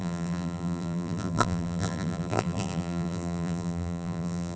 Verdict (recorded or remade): remade